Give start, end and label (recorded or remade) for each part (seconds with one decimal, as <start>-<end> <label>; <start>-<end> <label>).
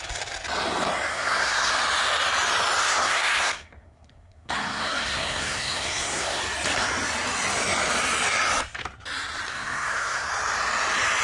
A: 0.0-1.1 recorded; 1.1-1.7 remade; 1.7-2.8 recorded; 2.8-6.4 remade; 6.4-9.5 recorded; 9.5-10.3 remade; 10.3-11.2 recorded